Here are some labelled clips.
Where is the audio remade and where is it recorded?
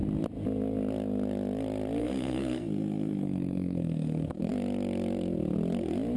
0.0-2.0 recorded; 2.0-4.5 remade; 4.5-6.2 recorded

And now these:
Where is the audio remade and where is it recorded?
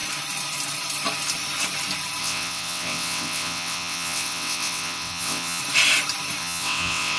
0.0-2.2 recorded; 2.2-5.6 remade; 5.6-6.4 recorded; 6.4-7.2 remade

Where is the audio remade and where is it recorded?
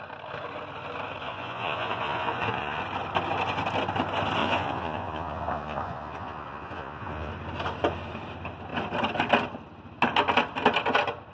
0.0-1.2 recorded; 1.2-2.8 remade; 2.8-4.4 recorded; 4.4-7.3 remade; 7.3-11.3 recorded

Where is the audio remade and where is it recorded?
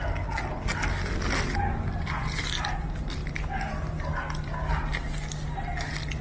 0.0-6.2 recorded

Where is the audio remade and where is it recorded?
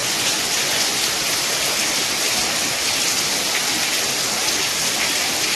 0.0-1.0 remade; 1.0-5.5 recorded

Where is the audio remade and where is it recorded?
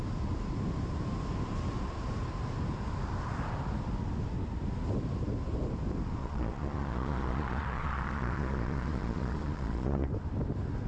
0.0-6.2 recorded; 6.2-10.1 remade; 10.1-10.9 recorded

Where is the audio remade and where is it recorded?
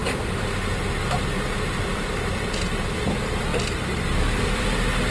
0.0-3.5 remade; 3.5-4.2 recorded; 4.2-5.1 remade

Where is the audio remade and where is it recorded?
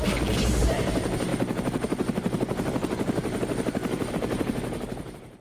0.0-1.3 remade; 1.3-4.1 recorded; 4.1-5.4 remade